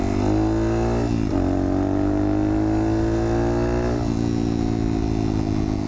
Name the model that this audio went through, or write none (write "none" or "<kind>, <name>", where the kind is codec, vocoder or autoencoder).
none